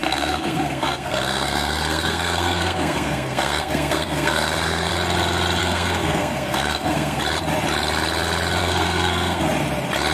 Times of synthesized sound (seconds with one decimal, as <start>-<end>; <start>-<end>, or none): 0.0-4.9; 5.6-7.2; 8.6-9.4